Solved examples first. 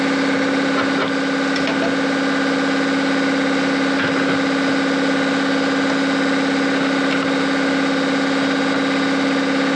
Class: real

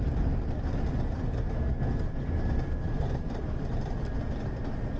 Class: real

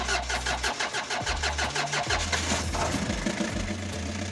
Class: real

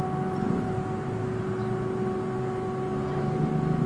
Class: real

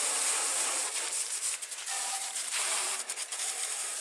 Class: fake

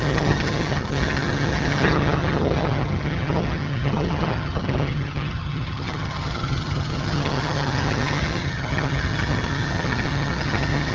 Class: fake